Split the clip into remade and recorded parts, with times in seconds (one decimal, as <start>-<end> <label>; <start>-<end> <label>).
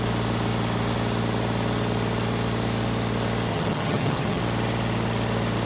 0.0-3.5 recorded; 3.5-4.4 remade; 4.4-5.7 recorded